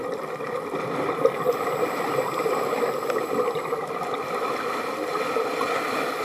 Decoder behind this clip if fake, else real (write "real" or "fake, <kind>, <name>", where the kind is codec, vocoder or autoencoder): real